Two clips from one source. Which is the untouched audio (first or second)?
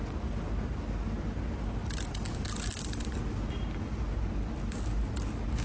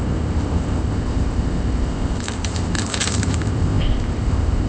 first